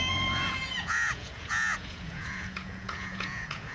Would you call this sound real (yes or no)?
no